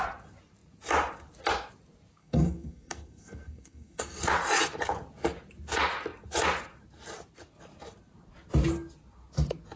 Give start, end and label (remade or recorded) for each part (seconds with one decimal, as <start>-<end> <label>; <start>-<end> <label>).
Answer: 0.0-2.2 recorded; 2.2-4.2 remade; 4.2-9.8 recorded